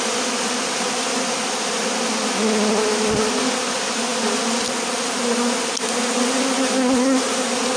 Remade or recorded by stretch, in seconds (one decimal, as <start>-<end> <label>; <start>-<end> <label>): 0.0-7.8 recorded